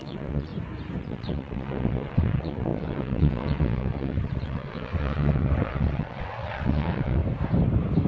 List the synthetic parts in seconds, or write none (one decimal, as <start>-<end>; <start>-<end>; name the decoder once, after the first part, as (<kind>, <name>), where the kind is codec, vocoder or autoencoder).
0.0-0.5 (vocoder, WaveNeXt); 1.0-7.2